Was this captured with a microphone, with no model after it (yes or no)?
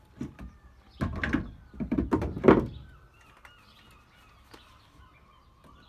yes